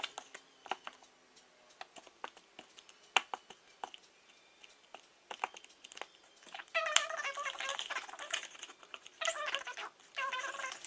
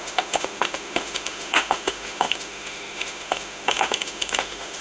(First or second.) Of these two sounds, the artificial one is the second